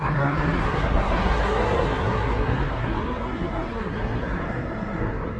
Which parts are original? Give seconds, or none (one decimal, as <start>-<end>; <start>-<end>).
none